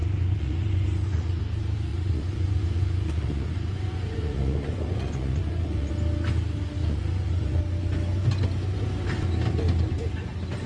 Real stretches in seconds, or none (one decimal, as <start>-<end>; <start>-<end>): 1.4-1.9; 5.9-6.8; 7.6-10.7